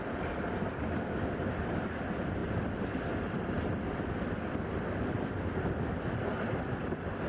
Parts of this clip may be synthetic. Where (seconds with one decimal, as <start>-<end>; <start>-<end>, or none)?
none